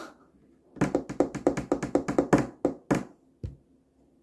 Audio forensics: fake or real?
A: real